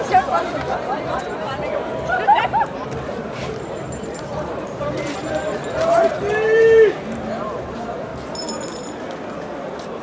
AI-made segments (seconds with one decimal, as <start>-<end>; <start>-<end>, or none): 0.0-8.1; 9.6-10.0